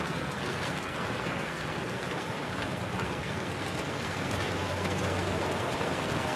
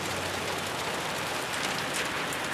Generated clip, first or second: first